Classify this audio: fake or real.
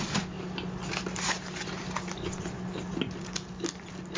real